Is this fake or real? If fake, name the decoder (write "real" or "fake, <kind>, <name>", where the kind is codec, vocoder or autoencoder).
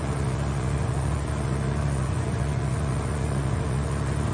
fake, vocoder, Vocos